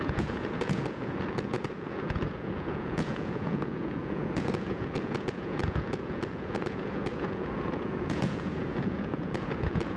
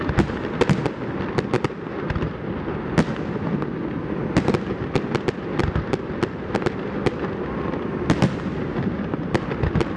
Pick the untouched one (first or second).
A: second